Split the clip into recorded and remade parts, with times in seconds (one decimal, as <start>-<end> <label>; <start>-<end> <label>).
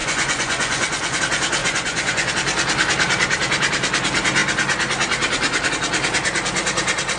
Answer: 0.0-1.2 remade; 1.2-1.6 recorded; 1.6-2.3 remade; 2.3-7.2 recorded